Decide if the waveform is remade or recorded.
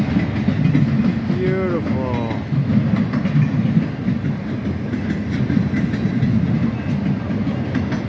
recorded